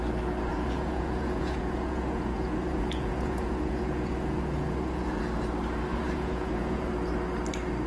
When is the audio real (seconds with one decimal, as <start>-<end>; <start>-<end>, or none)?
0.0-0.5; 5.2-5.9; 6.9-7.9